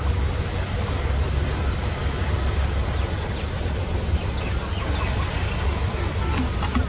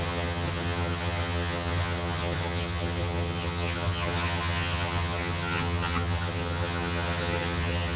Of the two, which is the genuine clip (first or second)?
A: first